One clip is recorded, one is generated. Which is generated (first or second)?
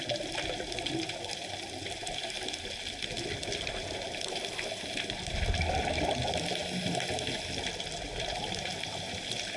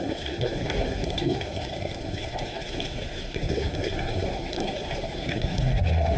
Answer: second